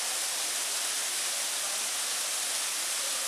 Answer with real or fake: real